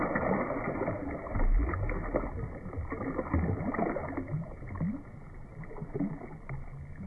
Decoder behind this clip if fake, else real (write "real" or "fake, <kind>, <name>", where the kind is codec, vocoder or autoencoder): real